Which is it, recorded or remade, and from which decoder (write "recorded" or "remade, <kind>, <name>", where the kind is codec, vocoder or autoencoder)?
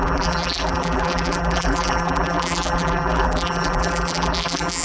remade, vocoder, BigVGAN v2